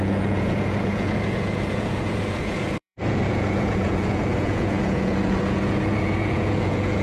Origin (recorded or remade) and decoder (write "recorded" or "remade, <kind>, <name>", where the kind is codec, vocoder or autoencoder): remade, vocoder, Vocos